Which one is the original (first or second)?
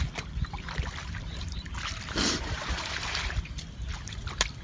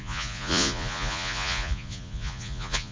first